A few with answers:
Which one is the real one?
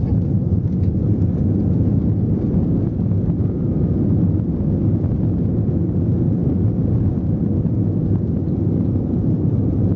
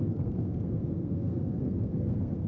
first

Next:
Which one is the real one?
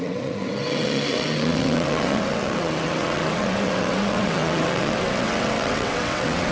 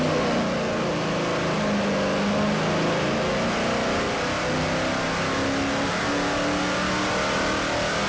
second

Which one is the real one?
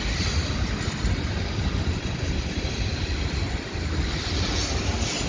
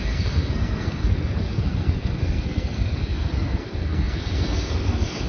first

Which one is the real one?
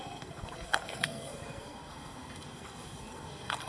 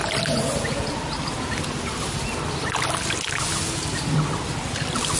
second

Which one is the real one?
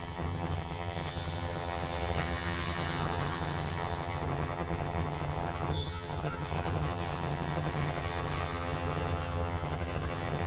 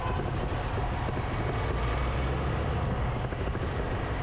second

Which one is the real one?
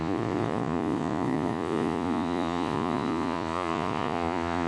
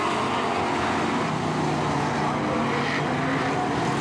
second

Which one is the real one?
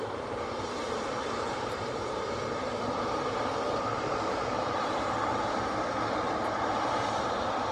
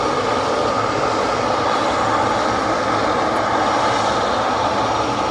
second